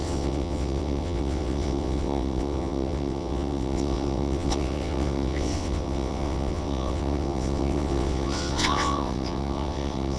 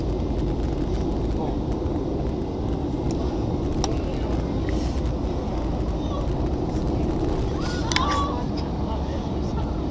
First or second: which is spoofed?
first